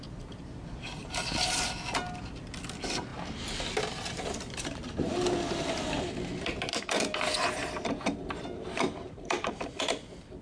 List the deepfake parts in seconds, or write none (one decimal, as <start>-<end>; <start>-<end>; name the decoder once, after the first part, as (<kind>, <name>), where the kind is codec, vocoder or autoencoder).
8.2-9.6 (vocoder, BigVGAN v2)